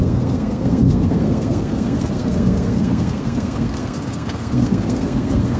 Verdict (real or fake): fake